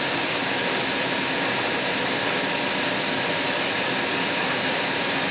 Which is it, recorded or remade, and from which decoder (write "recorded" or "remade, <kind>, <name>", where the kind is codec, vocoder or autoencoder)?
recorded